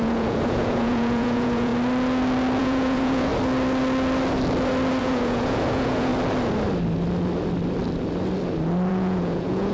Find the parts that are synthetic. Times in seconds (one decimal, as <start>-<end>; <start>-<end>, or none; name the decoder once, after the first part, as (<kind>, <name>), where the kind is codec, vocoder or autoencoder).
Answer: 0.0-1.7 (vocoder, Vocos); 2.6-3.3; 5.0-6.1; 8.9-9.7